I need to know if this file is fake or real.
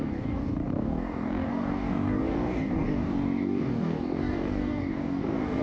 fake